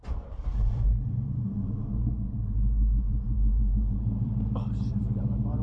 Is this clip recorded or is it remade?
remade